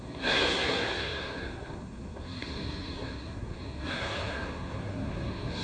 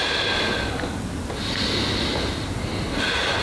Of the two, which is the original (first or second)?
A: second